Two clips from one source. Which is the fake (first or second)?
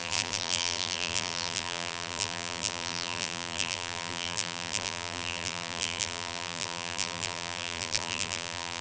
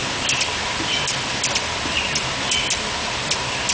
first